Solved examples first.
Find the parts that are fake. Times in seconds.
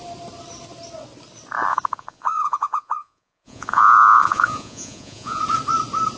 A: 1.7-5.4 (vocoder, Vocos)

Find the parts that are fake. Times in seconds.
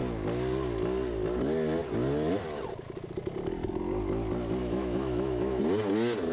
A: 4.6-5.6 (autoencoder, DAC-VAE)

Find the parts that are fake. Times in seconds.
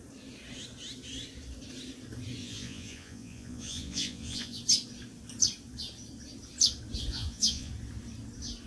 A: 2.4-4.6 (vocoder, Vocos); 7.1-7.7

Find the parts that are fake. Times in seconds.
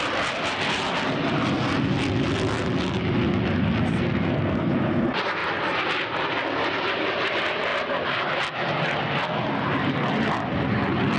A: 3.9-4.7 (codec, SNAC)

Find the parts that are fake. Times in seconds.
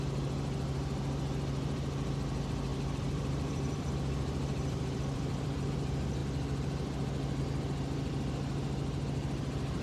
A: 2.7-5.7 (vocoder, BigVGAN v2)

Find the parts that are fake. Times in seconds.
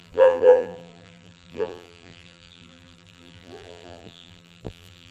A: 0.0-5.1 (vocoder, BigVGAN v2)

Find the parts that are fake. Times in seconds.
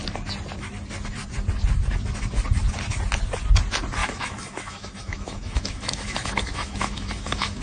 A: 4.0-7.6 (autoencoder, DAC-VAE)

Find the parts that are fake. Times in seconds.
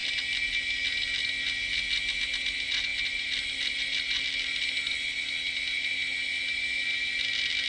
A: none